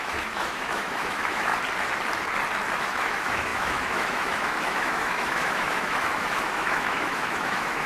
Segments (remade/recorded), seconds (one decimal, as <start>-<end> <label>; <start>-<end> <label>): 0.0-1.5 remade; 1.5-2.8 recorded; 2.8-7.9 remade